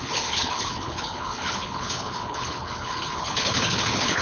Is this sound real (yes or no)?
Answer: no